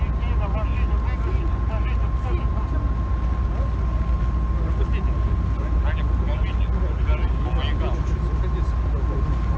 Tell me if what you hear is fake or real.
real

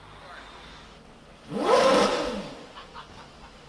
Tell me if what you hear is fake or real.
real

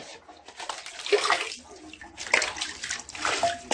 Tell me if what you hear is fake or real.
real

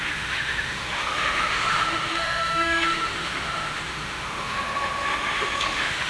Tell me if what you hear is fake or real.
fake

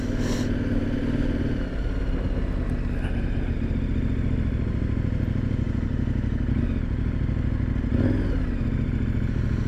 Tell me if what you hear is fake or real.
real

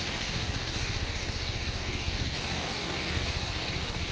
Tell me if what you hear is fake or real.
fake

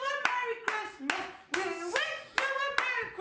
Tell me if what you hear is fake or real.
real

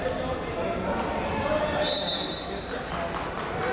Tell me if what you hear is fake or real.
real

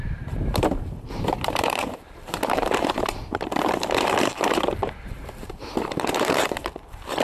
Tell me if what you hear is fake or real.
fake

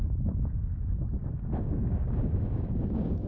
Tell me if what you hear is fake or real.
fake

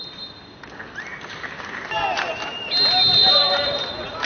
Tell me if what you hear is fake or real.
real